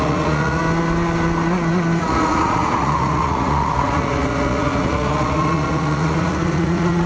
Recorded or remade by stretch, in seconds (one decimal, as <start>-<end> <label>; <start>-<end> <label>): 0.0-0.6 remade; 0.6-2.0 recorded; 2.0-7.1 remade